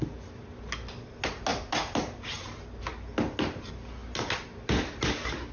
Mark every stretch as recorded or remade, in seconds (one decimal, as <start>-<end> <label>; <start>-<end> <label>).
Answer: 0.0-5.5 recorded